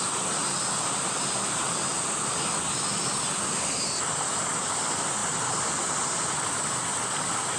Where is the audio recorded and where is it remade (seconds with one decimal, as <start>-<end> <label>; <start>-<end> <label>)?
0.0-7.6 recorded